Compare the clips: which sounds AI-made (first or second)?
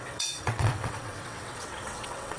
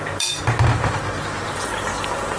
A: first